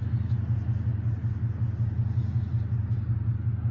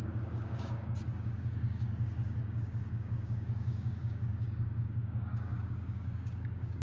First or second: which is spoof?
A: second